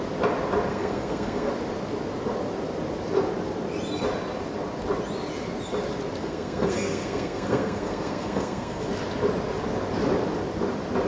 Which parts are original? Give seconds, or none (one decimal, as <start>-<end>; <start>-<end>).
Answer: 0.0-0.7; 1.5-6.2; 8.9-11.1